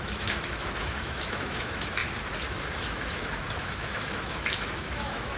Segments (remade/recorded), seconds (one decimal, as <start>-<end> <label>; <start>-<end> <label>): 0.0-2.0 remade; 2.0-2.8 recorded; 2.8-5.4 remade